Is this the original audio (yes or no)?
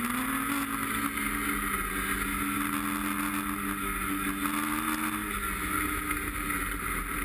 yes